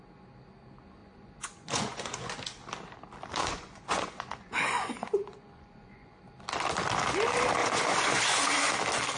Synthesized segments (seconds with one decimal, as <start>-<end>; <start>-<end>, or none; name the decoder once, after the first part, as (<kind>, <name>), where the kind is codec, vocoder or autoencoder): 1.0-2.3 (vocoder, Vocos); 3.4-6.2; 7.6-8.7